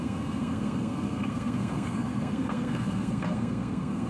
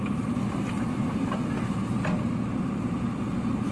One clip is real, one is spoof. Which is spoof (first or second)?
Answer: first